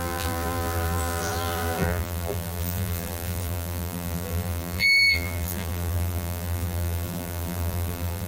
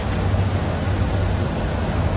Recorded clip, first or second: second